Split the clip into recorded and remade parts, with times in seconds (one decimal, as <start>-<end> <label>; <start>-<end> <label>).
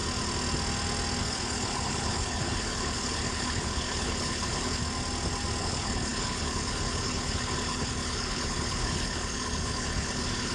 0.0-1.2 recorded; 1.2-4.8 remade; 4.8-5.6 recorded; 5.6-10.5 remade